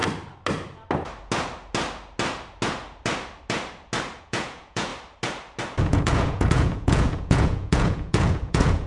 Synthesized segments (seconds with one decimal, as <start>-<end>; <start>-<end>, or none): 4.2-4.9; 5.8-8.9